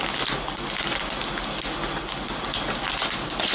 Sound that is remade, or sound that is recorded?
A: recorded